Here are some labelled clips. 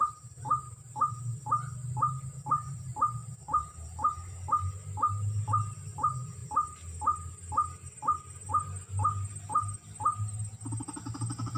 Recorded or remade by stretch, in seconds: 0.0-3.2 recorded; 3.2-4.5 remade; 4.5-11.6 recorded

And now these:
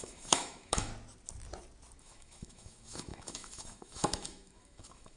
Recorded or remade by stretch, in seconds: 0.0-0.9 remade; 0.9-2.0 recorded; 2.0-5.2 remade